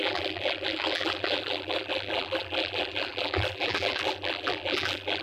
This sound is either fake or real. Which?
fake